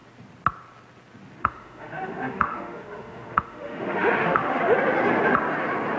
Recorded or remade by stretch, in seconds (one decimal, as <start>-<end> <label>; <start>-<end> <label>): 0.0-1.4 recorded; 1.4-4.6 remade; 4.6-6.0 recorded